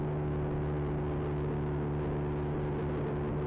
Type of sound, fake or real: real